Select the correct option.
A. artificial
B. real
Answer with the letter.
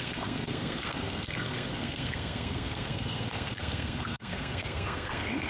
A